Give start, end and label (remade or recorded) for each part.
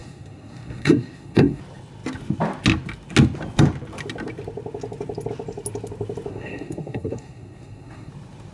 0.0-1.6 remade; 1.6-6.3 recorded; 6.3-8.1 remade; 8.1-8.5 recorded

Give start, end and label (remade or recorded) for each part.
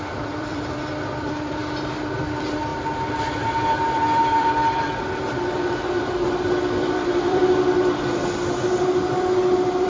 0.0-1.6 remade; 1.6-2.2 recorded; 2.2-2.7 remade; 2.7-3.5 recorded; 3.5-7.4 remade; 7.4-9.5 recorded; 9.5-9.9 remade